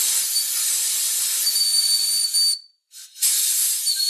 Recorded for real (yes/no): yes